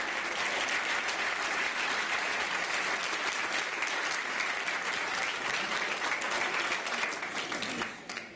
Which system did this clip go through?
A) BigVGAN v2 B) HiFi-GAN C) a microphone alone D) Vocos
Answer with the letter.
C